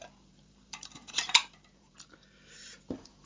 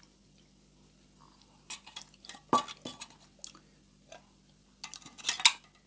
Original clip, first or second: second